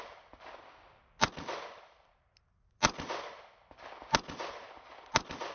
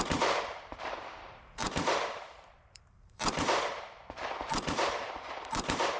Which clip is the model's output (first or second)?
second